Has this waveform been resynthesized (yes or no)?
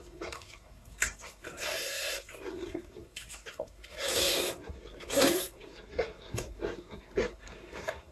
yes